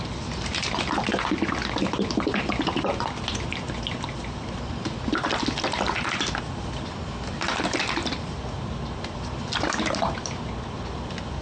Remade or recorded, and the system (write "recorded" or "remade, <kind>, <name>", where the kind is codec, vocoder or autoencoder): remade, vocoder, BigVGAN v2